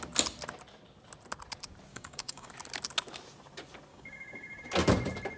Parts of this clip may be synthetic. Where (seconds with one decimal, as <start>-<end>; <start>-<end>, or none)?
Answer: 1.9-2.5; 3.9-4.7